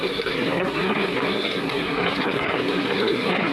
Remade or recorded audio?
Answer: remade